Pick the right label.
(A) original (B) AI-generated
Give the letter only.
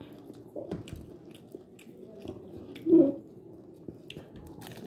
A